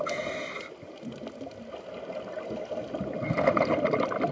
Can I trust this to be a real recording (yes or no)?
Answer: yes